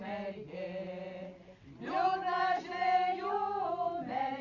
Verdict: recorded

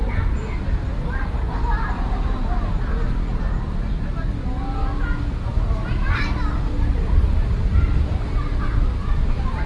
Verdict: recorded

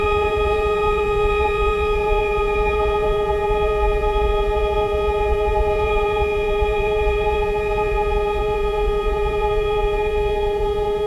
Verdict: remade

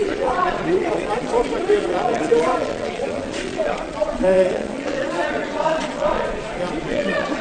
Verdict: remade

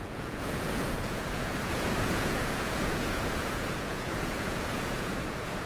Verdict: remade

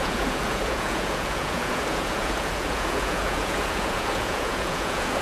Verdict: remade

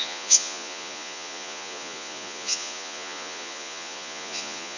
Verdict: remade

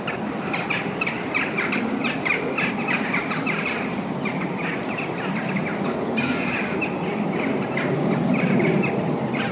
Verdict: recorded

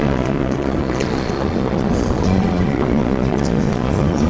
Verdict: remade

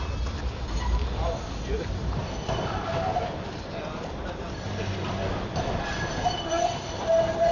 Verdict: recorded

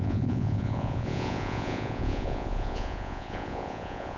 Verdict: remade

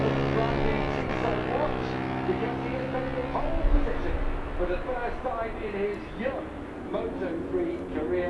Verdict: recorded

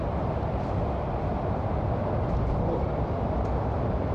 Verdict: recorded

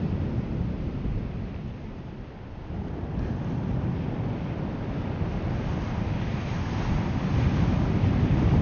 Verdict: recorded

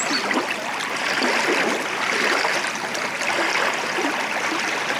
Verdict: recorded